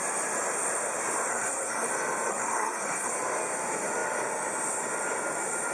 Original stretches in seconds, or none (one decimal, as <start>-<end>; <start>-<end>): 0.0-1.3; 1.9-2.3; 3.1-5.7